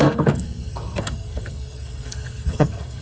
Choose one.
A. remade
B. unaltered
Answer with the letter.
A